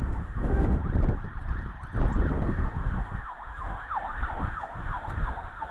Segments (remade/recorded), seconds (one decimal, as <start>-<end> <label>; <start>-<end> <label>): 0.0-0.8 remade; 0.8-2.3 recorded; 2.3-5.7 remade